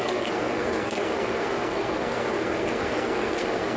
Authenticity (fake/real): fake